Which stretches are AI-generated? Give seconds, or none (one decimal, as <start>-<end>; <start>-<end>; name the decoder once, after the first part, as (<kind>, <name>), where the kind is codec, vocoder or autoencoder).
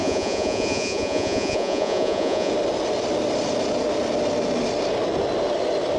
0.0-2.5 (vocoder, Vocos)